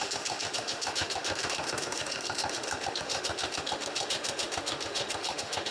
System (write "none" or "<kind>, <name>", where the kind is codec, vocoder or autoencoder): autoencoder, DAC-VAE